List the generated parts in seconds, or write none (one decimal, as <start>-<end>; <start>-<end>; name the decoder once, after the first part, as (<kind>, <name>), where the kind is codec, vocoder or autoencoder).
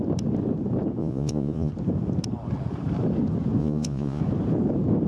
1.0-1.7 (vocoder, Vocos); 3.6-4.2